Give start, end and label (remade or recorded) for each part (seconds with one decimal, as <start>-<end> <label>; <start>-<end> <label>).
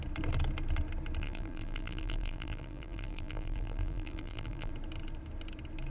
0.0-1.2 recorded; 1.2-4.7 remade; 4.7-5.9 recorded